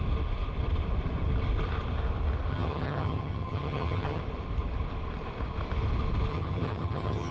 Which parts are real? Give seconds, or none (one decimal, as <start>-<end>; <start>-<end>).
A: 0.0-2.5; 4.2-6.3

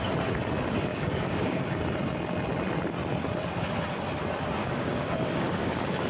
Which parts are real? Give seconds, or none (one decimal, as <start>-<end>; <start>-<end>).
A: 0.0-0.9; 1.6-4.6

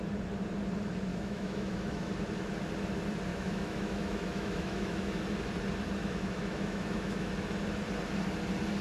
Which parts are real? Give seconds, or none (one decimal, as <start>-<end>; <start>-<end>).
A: 0.0-1.1; 2.1-3.3; 5.2-6.0; 7.3-8.8